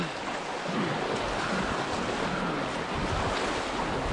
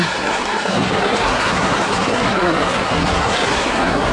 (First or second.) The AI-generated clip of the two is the second